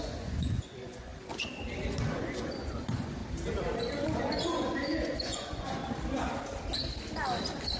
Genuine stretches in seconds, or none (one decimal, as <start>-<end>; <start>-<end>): 1.1-2.1; 3.2-4.2; 5.8-7.8